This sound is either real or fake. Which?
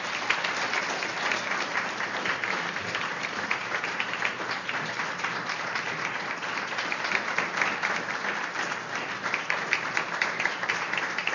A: fake